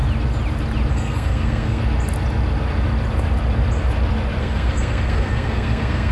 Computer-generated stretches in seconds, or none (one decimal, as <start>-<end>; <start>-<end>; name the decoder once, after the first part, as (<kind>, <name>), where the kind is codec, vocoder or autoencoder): 0.9-1.8 (codec, SNAC); 4.4-6.1